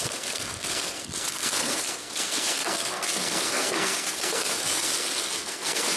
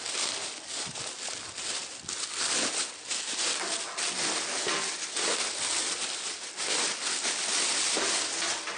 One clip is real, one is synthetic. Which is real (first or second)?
second